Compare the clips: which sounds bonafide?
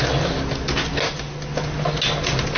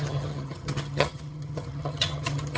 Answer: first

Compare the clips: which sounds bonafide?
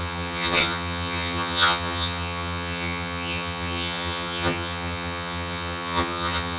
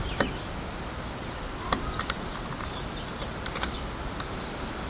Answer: second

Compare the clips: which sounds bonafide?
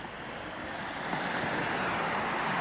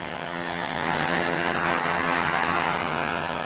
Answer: first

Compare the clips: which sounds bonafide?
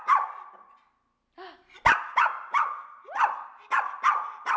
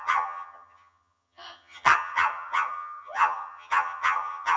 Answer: first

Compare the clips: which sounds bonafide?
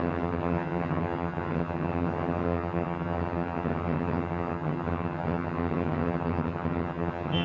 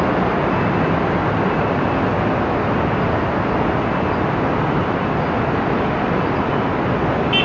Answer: second